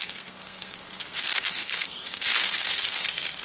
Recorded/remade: remade